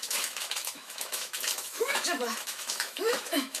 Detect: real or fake fake